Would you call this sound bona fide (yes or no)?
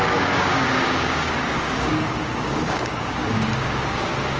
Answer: no